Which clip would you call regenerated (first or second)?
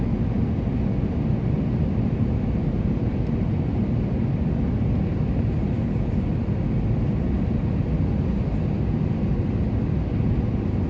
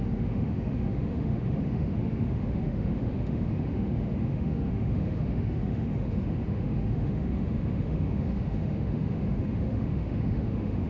second